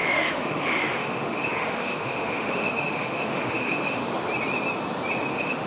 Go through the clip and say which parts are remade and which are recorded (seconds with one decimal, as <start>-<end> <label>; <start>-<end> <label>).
0.0-4.0 remade; 4.0-5.3 recorded; 5.3-5.7 remade